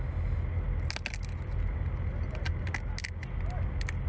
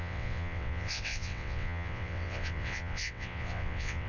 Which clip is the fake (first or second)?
second